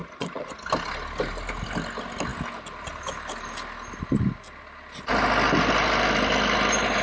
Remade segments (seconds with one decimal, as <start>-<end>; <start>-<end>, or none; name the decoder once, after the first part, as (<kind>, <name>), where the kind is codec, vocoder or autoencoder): 0.0-0.5 (vocoder, Vocos)